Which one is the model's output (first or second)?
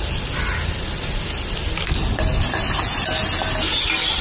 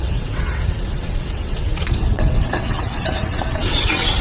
second